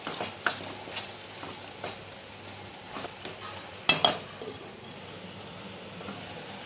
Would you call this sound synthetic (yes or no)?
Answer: no